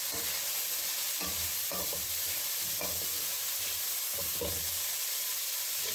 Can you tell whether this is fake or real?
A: fake